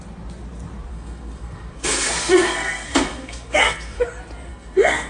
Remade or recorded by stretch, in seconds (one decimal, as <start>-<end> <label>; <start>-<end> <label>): 0.0-0.9 recorded; 0.9-4.0 remade; 4.0-4.5 recorded; 4.5-5.1 remade